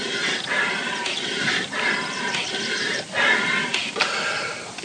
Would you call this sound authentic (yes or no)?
yes